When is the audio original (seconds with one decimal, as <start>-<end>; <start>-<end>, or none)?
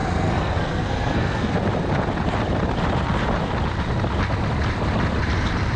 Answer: 1.5-5.8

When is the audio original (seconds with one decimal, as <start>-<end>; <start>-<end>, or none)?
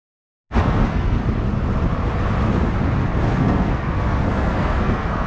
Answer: 0.0-0.6; 1.2-3.3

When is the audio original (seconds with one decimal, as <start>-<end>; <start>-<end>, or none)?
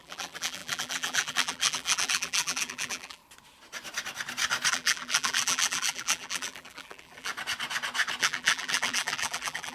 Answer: 3.2-4.7; 7.3-8.2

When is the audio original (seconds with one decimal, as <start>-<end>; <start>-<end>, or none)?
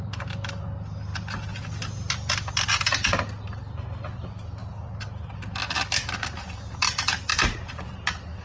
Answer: 0.0-8.4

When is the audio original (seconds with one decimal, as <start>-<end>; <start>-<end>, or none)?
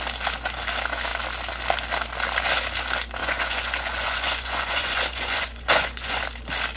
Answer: 0.0-3.2; 6.2-6.8